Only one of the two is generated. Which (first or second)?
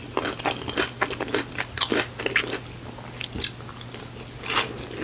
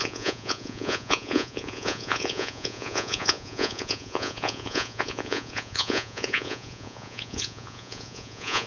second